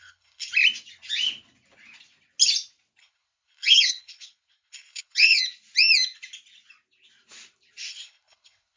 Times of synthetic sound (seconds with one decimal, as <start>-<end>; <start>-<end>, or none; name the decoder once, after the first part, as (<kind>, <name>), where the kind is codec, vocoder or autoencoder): 0.0-0.5 (codec, HILCodec); 3.0-5.4; 7.9-8.8